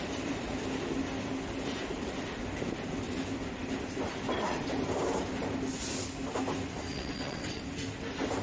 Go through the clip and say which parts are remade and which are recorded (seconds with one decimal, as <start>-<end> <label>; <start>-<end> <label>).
0.0-6.9 recorded; 6.9-7.6 remade; 7.6-8.4 recorded